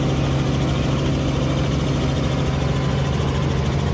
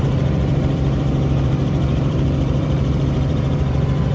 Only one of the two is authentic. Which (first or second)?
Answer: first